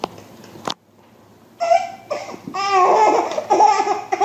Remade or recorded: recorded